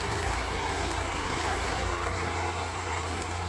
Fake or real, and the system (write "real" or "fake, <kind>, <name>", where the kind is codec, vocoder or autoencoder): fake, codec, SNAC